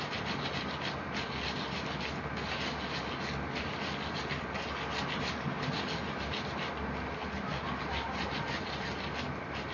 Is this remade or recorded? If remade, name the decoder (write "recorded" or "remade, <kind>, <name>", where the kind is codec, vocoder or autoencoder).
recorded